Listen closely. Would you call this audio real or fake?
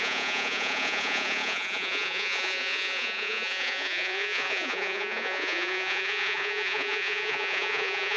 fake